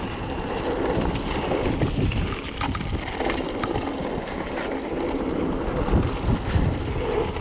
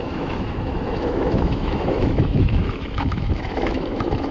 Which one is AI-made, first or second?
second